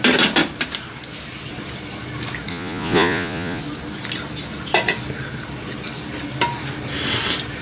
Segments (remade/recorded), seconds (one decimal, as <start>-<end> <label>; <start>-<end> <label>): 0.0-2.5 recorded; 2.5-3.6 remade; 3.6-7.6 recorded